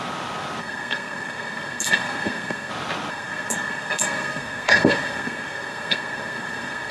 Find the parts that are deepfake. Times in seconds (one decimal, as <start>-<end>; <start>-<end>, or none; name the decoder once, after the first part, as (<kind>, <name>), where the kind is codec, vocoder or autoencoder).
0.6-2.7 (codec, SNAC); 3.1-6.9